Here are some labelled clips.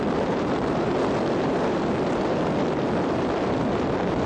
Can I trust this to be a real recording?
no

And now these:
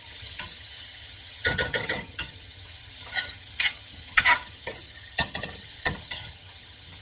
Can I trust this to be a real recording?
no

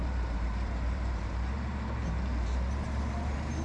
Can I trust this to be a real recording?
no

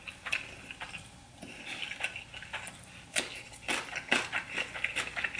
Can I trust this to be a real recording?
yes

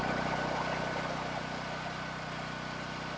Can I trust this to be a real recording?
yes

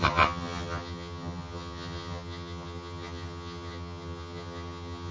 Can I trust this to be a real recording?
no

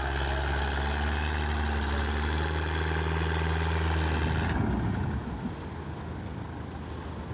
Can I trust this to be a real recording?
yes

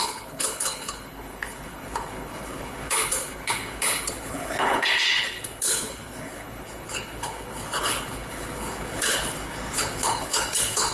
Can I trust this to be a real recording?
no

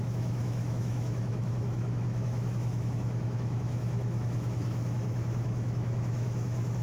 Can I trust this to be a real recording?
no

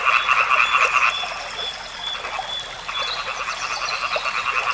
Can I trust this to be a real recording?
yes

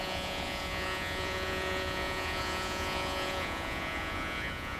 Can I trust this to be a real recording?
no